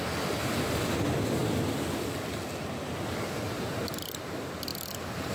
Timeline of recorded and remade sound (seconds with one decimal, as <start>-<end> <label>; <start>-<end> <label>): 0.0-5.3 recorded